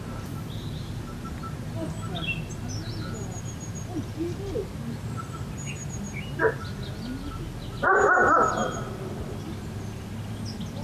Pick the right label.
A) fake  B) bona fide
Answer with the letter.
B